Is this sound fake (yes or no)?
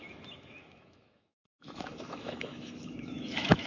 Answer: yes